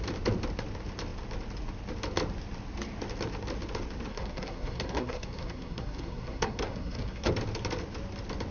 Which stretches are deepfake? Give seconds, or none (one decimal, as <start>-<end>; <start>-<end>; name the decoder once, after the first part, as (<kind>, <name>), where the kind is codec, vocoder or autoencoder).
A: 4.1-7.3 (codec, SNAC)